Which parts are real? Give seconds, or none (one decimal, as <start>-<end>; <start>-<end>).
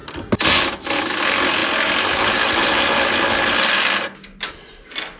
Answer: 0.0-5.2